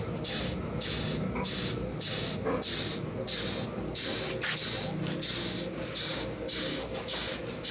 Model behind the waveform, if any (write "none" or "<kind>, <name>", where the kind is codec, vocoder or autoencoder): none